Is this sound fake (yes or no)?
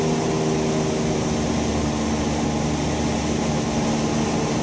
no